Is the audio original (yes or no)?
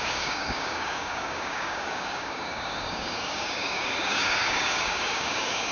no